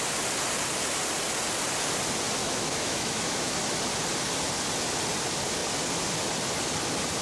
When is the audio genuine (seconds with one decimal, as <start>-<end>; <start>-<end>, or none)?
0.0-2.4; 3.6-7.2